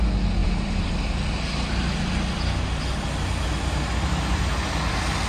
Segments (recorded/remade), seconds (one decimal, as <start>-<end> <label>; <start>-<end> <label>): 0.0-0.4 recorded; 0.4-0.9 remade; 0.9-5.3 recorded